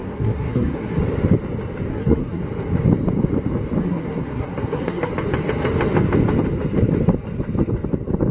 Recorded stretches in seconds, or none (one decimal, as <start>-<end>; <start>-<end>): 1.0-1.9; 2.4-3.8; 5.1-8.3